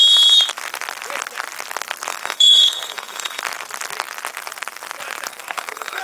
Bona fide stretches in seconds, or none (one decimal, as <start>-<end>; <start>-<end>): 0.0-2.1; 3.4-5.3